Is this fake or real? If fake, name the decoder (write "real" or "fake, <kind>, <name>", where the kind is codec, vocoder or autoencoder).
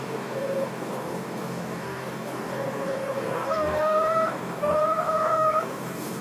fake, codec, DAC